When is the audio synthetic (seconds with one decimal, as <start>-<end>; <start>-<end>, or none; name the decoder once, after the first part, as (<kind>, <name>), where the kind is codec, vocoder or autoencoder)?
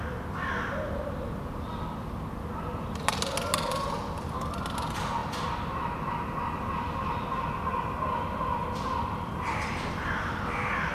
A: 8.6-10.3 (vocoder, BigVGAN v2)